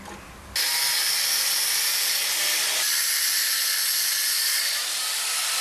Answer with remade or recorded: recorded